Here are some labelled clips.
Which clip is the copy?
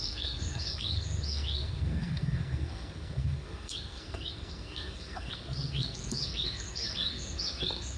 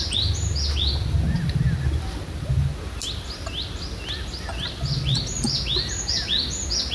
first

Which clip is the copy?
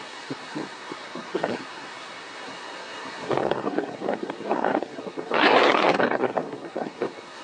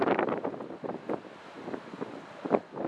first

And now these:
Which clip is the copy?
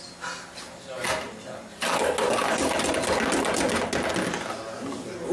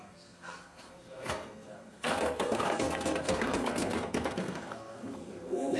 second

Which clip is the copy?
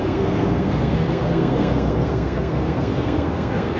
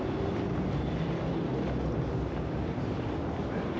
first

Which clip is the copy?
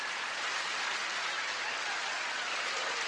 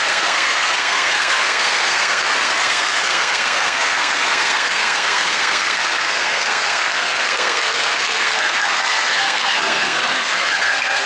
second